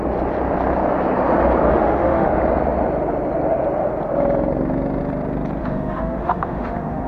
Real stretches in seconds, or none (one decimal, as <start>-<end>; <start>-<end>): 0.0-1.7; 2.3-5.6